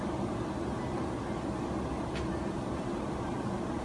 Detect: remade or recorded recorded